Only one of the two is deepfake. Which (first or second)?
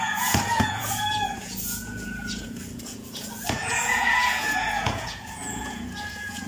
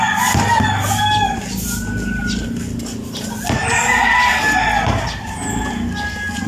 first